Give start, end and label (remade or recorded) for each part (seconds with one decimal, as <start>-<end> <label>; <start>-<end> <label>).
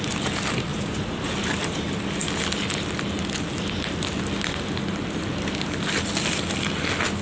0.0-0.7 recorded; 0.7-1.3 remade; 1.3-7.2 recorded